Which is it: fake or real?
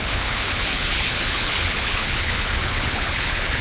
fake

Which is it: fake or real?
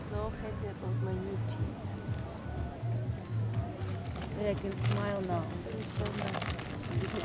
real